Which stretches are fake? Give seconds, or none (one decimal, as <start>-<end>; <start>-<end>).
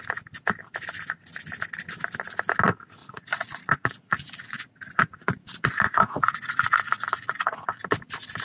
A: 3.0-7.8